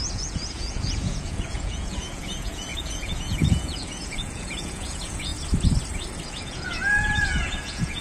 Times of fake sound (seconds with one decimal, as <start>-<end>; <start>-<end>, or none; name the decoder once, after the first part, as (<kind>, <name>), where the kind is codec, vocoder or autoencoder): 0.0-5.3 (vocoder, Vocos); 6.3-8.0